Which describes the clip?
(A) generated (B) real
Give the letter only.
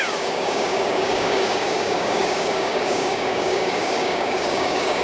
A